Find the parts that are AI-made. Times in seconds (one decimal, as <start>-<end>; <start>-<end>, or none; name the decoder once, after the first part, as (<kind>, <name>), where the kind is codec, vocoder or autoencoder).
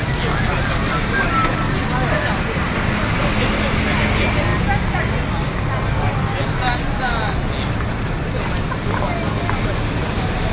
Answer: none